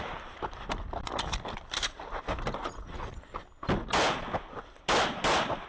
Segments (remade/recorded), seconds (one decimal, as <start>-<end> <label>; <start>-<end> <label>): 0.0-2.6 recorded; 2.6-3.1 remade; 3.1-5.7 recorded